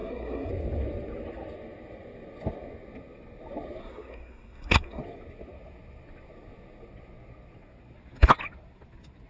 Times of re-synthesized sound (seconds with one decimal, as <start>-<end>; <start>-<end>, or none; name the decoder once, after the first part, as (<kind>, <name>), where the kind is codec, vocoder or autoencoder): 0.0-0.5 (codec, SNAC); 3.8-5.0